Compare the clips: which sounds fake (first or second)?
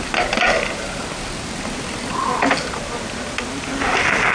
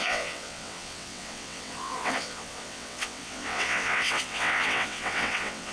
second